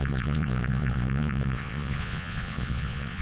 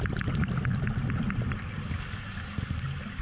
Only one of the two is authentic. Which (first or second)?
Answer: second